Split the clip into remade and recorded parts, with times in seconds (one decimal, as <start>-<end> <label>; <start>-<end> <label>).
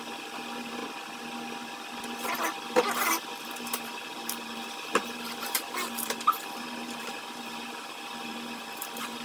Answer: 0.0-0.8 remade; 0.8-2.7 recorded; 2.7-9.2 remade